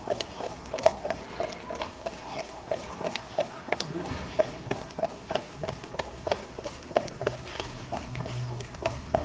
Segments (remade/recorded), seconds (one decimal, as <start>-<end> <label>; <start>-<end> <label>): 0.0-1.2 remade; 1.2-1.8 recorded; 1.8-9.2 remade